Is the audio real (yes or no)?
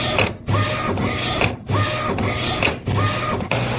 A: yes